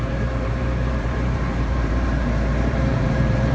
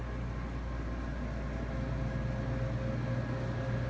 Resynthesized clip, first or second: first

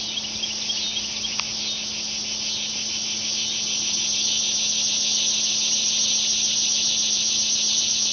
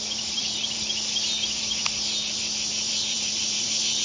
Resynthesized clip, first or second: second